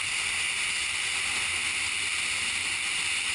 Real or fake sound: real